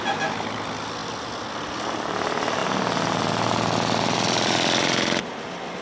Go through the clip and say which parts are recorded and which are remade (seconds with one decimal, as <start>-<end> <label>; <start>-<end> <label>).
0.0-5.8 recorded